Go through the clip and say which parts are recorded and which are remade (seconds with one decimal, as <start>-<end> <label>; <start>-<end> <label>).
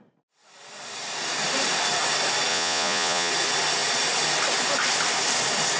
0.0-2.5 recorded; 2.5-3.3 remade; 3.3-5.8 recorded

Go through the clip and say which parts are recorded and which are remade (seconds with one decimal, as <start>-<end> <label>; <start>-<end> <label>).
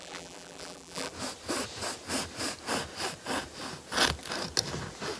0.0-1.1 remade; 1.1-5.2 recorded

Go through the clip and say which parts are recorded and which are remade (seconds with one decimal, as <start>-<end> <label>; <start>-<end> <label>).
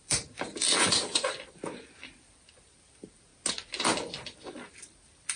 0.0-3.3 remade; 3.3-4.5 recorded; 4.5-5.4 remade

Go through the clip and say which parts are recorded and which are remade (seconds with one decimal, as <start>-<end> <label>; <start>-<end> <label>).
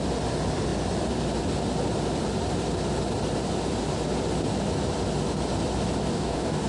0.0-6.1 recorded; 6.1-6.7 remade